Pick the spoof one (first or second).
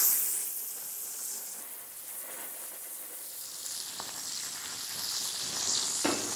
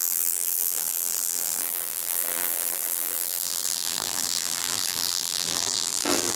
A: second